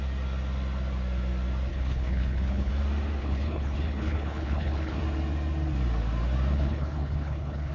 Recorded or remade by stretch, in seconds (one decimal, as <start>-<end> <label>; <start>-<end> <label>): 0.0-1.7 recorded; 1.7-2.7 remade; 2.7-3.2 recorded; 3.2-5.0 remade; 5.0-6.5 recorded; 6.5-7.7 remade